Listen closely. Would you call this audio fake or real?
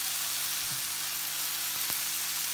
real